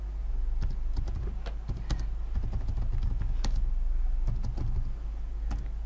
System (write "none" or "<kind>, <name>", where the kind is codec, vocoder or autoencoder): none